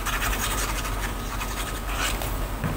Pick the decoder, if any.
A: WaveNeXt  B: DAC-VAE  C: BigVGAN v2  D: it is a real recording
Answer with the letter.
D